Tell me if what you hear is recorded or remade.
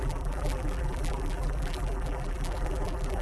remade